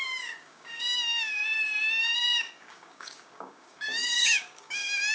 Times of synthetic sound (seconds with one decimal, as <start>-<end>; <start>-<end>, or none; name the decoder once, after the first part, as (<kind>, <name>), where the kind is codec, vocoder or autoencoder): 0.0-1.4 (codec, DAC); 2.0-5.1